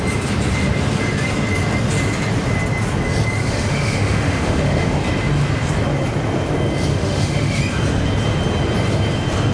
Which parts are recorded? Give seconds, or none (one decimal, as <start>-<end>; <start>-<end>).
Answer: 0.0-3.4; 5.0-6.9; 7.6-9.5